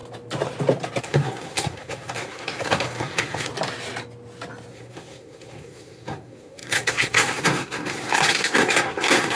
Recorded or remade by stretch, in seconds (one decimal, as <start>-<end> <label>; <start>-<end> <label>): 0.0-1.0 recorded; 1.0-3.5 remade; 3.5-4.7 recorded; 4.7-9.4 remade